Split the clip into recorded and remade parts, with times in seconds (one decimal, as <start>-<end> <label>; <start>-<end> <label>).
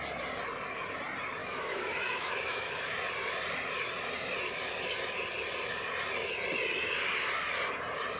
0.0-1.4 recorded; 1.4-2.8 remade; 2.8-8.2 recorded